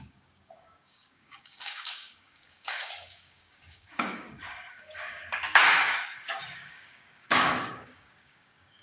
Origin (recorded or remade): remade